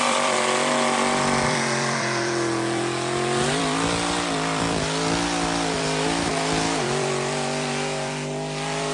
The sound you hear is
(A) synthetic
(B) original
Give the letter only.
A